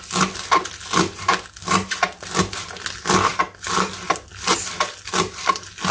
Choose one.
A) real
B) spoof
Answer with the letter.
A